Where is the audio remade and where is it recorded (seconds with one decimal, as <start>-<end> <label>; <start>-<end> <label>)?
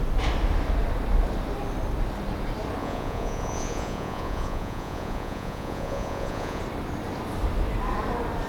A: 0.0-2.8 recorded; 2.8-6.6 remade; 6.6-8.5 recorded